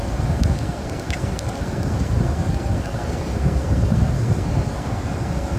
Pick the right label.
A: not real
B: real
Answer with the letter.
A